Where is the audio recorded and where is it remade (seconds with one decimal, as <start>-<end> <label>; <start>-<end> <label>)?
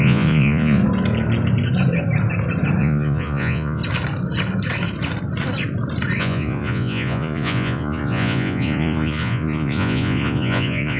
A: 0.0-0.8 remade; 0.8-2.8 recorded; 2.8-3.8 remade; 3.8-6.2 recorded; 6.2-11.0 remade